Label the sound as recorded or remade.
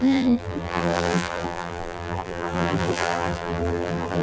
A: remade